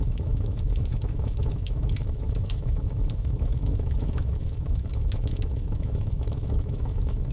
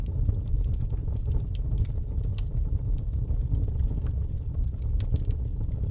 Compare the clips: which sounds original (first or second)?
second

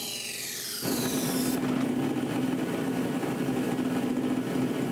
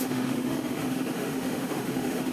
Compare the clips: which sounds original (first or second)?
first